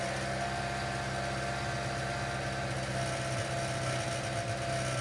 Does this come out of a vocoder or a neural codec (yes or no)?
no